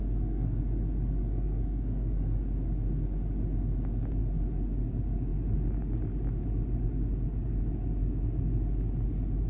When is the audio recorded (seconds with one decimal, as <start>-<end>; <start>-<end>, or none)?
0.6-1.2; 2.4-9.5